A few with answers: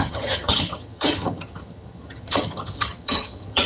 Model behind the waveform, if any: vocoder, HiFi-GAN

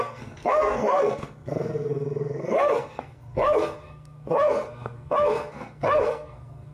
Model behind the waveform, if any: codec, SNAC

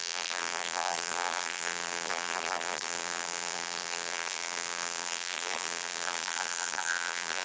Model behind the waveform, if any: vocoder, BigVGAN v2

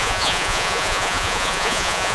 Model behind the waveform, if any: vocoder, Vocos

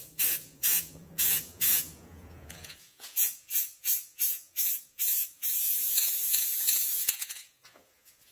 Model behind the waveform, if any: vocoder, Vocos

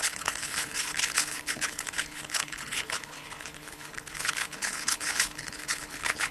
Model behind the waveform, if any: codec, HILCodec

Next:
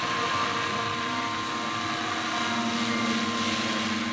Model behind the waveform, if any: none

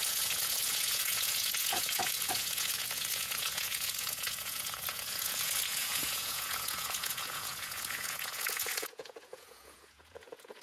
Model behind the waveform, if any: vocoder, Vocos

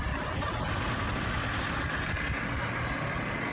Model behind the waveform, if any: none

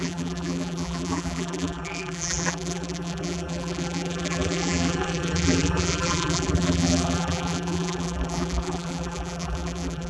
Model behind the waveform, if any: vocoder, BigVGAN v2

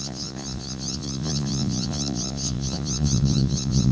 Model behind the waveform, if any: vocoder, Vocos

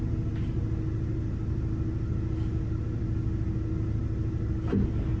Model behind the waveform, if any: none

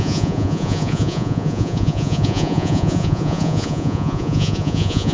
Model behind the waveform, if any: vocoder, Vocos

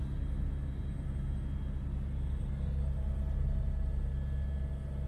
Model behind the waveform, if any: none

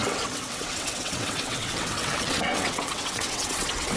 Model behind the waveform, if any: vocoder, WaveNeXt